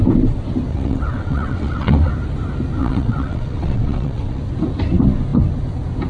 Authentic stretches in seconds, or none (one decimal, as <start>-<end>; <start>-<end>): 0.0-0.7; 2.1-2.8; 4.4-6.1